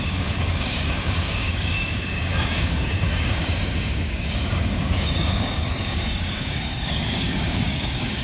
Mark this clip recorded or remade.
remade